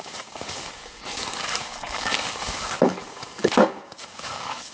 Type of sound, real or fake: fake